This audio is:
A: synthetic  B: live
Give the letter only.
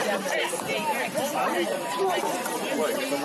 B